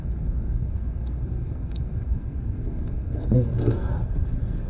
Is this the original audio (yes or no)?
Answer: no